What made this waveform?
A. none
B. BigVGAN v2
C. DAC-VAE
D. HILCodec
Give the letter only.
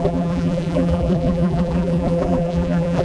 B